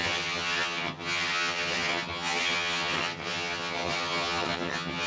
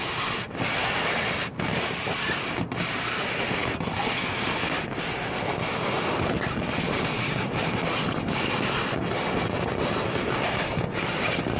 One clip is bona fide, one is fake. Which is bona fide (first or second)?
second